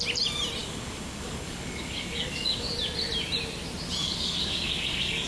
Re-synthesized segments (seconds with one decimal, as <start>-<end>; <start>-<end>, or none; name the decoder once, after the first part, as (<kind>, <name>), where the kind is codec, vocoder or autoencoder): 0.6-2.7 (codec, DAC); 4.0-5.3